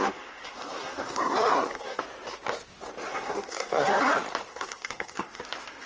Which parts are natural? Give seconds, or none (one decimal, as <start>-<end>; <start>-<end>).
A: 2.0-3.1; 4.0-4.5; 5.4-5.9